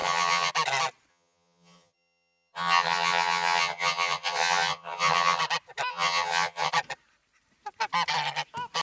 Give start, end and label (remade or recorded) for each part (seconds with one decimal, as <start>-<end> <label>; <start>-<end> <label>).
0.0-0.5 remade; 0.5-1.1 recorded; 1.1-5.4 remade; 5.4-5.9 recorded; 5.9-6.7 remade; 6.7-8.8 recorded

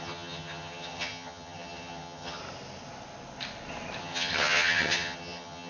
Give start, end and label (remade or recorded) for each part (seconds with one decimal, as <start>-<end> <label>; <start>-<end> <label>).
0.0-2.4 remade; 2.4-4.0 recorded; 4.0-5.7 remade